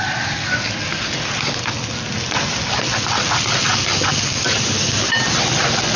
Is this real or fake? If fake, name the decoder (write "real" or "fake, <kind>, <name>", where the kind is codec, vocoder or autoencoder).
real